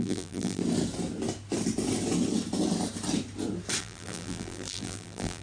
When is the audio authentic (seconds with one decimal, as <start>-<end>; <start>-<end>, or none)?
0.6-3.8